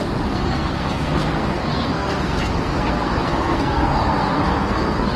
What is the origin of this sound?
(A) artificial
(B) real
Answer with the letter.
A